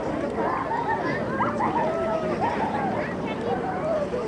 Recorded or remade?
remade